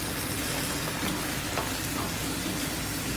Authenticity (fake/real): real